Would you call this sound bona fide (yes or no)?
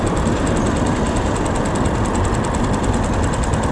yes